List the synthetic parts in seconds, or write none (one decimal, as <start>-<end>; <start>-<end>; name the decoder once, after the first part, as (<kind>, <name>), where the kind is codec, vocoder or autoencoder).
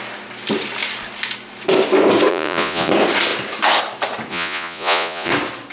2.3-2.9 (vocoder, Vocos); 4.3-5.3